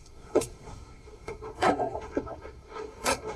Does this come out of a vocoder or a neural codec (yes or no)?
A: yes